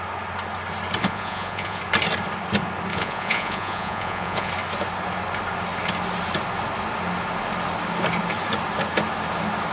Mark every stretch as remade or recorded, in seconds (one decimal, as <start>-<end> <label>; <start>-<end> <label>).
0.0-1.0 recorded; 1.0-1.8 remade; 1.8-2.9 recorded; 2.9-4.5 remade; 4.5-9.7 recorded